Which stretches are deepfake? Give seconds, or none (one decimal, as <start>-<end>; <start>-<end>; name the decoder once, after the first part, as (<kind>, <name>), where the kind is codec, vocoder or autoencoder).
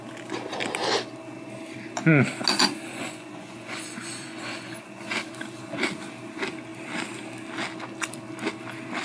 2.9-5.1 (vocoder, Vocos)